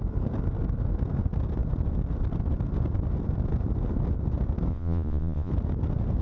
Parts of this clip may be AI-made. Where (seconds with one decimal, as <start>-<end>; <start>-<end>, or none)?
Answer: 4.7-5.5